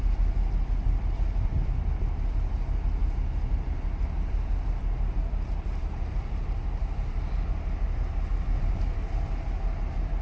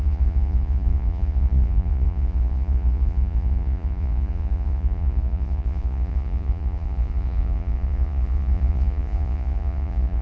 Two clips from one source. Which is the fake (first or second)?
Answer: second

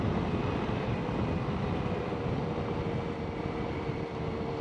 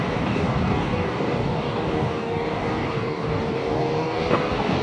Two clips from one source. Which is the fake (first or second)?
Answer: second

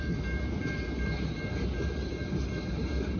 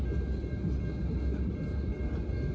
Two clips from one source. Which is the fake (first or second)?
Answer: first